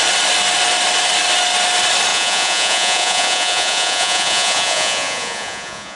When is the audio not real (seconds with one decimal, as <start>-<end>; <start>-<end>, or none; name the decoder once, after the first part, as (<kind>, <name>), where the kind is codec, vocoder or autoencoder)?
2.1-6.0 (vocoder, Vocos)